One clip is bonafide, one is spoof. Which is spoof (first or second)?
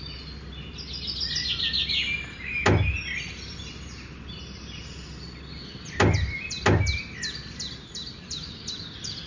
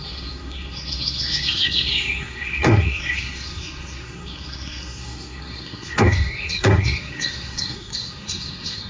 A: second